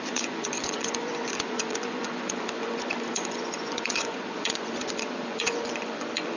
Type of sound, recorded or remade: remade